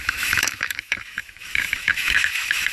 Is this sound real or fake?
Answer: fake